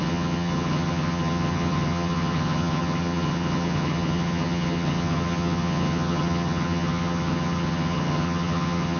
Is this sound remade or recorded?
remade